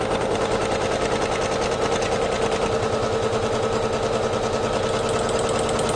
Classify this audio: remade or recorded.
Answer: recorded